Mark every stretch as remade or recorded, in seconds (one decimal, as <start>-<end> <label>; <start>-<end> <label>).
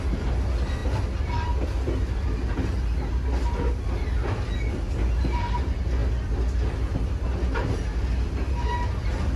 0.0-9.4 recorded